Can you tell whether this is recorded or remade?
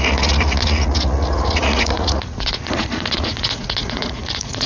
remade